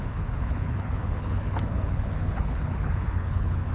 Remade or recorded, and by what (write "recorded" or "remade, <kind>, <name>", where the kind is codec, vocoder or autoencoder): remade, codec, HILCodec